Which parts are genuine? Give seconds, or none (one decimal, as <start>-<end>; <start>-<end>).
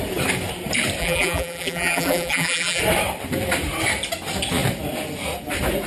0.0-1.0; 2.8-5.9